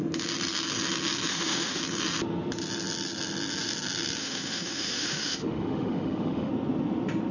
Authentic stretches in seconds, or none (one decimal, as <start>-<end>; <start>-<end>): 0.0-1.3; 1.8-4.2; 6.5-7.3